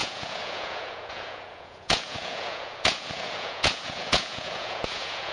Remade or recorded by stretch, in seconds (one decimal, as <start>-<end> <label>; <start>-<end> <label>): 0.0-5.3 remade

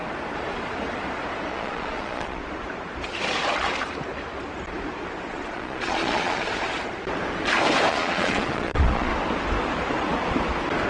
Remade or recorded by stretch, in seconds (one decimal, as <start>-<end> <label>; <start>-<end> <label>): 0.0-1.5 recorded; 1.5-2.4 remade; 2.4-5.3 recorded; 5.3-6.7 remade; 6.7-7.9 recorded; 7.9-9.1 remade; 9.1-10.9 recorded

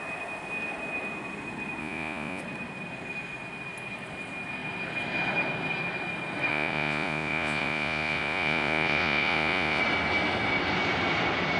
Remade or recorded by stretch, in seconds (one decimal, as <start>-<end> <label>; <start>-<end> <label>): 0.0-1.8 recorded; 1.8-2.4 remade; 2.4-6.5 recorded; 6.5-9.8 remade; 9.8-11.6 recorded

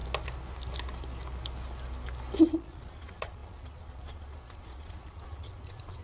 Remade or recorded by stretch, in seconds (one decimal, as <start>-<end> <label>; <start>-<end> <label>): 0.0-2.4 recorded; 2.4-6.0 remade